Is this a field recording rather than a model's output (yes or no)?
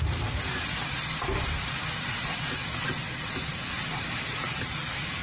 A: yes